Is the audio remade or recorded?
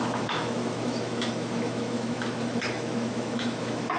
remade